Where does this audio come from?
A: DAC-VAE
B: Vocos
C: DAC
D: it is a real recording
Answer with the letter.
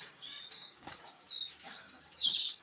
C